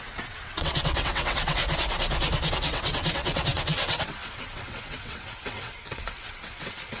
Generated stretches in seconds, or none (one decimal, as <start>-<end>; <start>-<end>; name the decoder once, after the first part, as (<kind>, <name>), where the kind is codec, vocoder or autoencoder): 0.0-1.6 (vocoder, WaveNeXt); 2.5-7.0